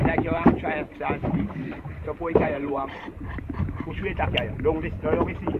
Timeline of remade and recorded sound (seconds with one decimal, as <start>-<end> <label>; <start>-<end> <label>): 0.0-1.6 recorded; 1.6-3.9 remade; 3.9-5.6 recorded